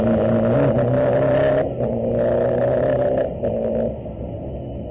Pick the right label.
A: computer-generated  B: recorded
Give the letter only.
B